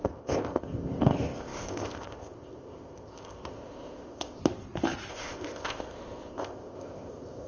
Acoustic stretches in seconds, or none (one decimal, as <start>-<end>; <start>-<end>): 4.4-5.1